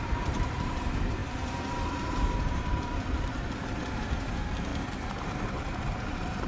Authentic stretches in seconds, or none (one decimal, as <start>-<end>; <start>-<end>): 4.7-5.2